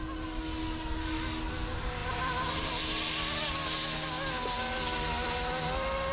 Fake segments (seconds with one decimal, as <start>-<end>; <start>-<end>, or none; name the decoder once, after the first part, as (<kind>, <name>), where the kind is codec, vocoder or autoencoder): none